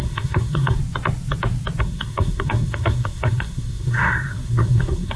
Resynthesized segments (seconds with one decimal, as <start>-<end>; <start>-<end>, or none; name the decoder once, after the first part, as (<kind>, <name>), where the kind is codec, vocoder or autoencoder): 0.0-0.8 (codec, SNAC); 1.8-5.2